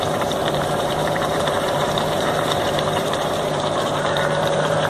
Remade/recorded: remade